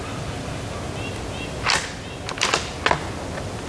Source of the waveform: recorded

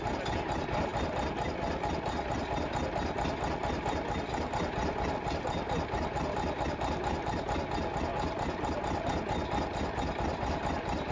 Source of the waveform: recorded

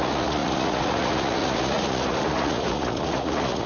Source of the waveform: remade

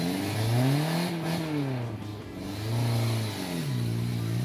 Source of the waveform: recorded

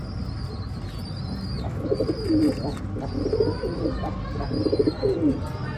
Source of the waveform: recorded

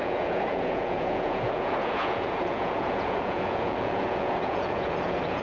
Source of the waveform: remade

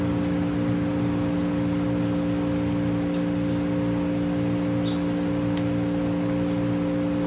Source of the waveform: recorded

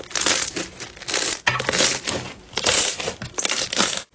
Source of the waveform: recorded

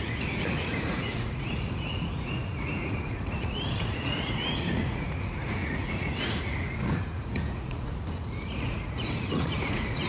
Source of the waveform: remade